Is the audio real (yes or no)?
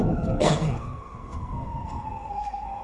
no